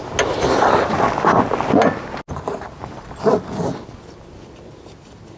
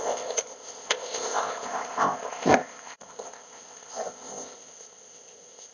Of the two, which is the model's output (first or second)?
second